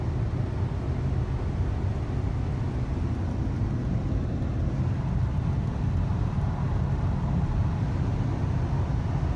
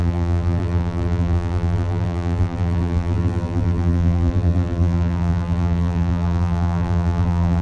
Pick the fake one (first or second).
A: second